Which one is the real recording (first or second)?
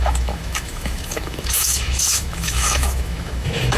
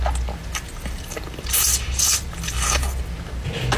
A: second